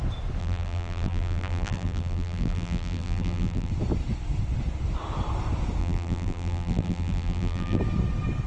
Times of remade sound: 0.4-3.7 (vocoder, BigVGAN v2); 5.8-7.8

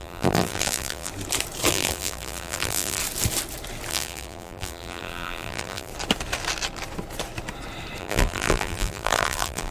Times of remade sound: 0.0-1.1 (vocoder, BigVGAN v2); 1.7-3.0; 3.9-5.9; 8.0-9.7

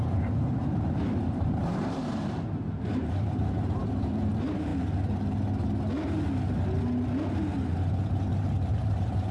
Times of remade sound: 0.0-4.7 (vocoder, BigVGAN v2); 8.7-9.3

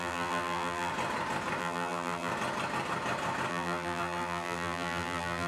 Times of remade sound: 0.0-0.9 (vocoder, BigVGAN v2); 1.6-2.3; 3.5-5.5

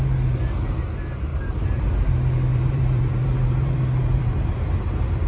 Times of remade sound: 1.3-2.1 (vocoder, BigVGAN v2); 2.5-4.8

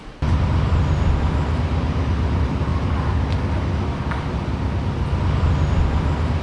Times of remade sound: none